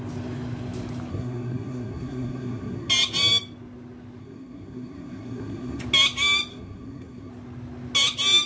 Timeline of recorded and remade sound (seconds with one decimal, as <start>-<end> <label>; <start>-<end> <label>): 0.0-1.1 recorded; 1.1-2.9 remade; 2.9-4.2 recorded; 4.2-5.8 remade; 5.8-6.5 recorded; 6.5-7.3 remade; 7.3-8.5 recorded